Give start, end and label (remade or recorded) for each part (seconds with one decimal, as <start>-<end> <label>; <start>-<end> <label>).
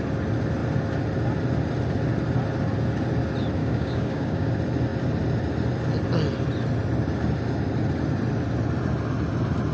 0.0-3.6 recorded; 3.6-4.5 remade; 4.5-9.7 recorded